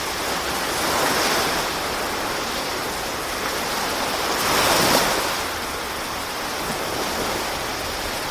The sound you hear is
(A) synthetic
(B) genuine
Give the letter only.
B